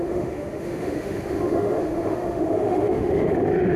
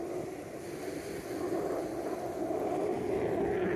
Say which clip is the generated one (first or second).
first